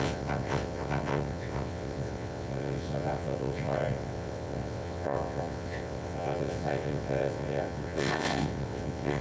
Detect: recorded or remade remade